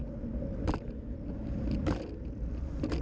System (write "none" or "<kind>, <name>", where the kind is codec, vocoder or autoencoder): none